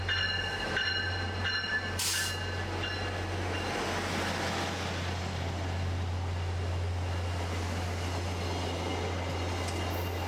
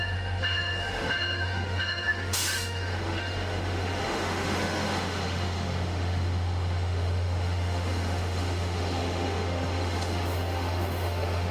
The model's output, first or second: second